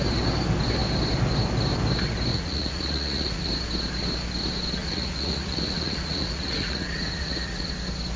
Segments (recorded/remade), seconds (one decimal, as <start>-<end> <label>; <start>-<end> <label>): 0.0-2.3 recorded; 2.3-3.5 remade; 3.5-4.8 recorded; 4.8-7.7 remade; 7.7-8.2 recorded